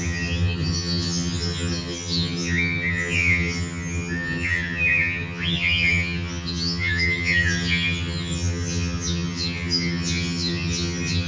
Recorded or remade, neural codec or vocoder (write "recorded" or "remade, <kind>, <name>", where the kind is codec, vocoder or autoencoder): remade, vocoder, HiFi-GAN